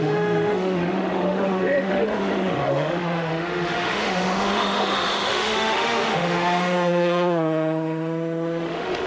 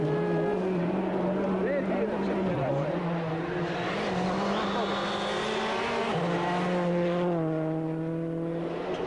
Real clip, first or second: second